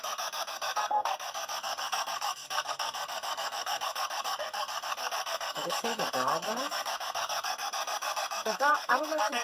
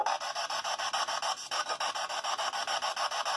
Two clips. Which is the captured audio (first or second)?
second